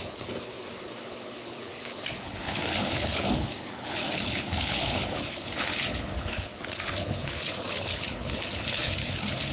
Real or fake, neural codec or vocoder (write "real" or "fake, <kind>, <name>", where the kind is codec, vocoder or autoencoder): fake, codec, HILCodec